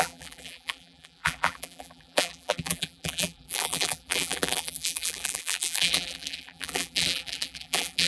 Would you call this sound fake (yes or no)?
yes